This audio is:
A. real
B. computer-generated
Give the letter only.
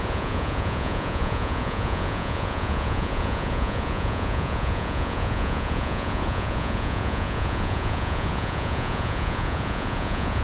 B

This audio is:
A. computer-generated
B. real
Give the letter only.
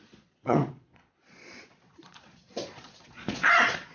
A